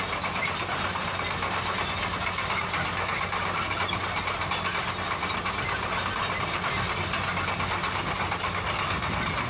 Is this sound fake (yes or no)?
no